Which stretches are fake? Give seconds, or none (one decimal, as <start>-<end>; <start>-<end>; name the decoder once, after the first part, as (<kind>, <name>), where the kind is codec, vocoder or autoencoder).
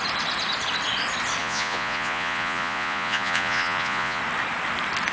1.4-4.2 (vocoder, Vocos)